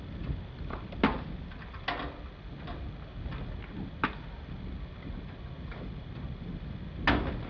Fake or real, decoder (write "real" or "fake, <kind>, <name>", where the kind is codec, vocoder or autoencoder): real